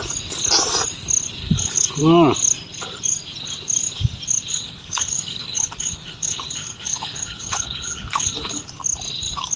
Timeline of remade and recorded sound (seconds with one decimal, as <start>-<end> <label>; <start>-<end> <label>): 0.0-1.4 recorded; 1.4-2.0 remade; 2.0-4.5 recorded; 4.5-8.7 remade; 8.7-9.6 recorded